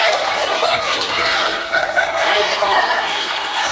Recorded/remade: remade